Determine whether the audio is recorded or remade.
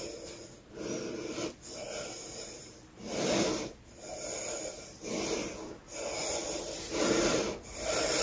recorded